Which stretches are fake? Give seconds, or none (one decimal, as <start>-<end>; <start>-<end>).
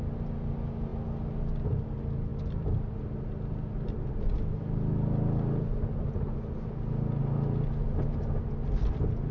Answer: none